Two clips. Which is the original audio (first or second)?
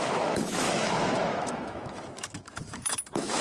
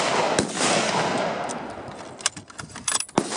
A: second